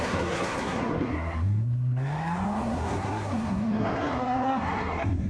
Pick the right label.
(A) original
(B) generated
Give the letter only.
B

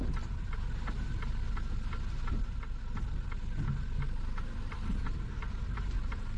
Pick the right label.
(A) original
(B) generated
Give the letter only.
A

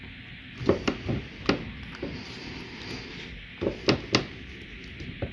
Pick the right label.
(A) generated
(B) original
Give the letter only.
B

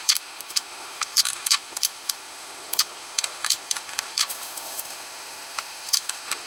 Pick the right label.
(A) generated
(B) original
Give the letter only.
A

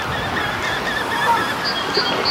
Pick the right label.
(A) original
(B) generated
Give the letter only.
A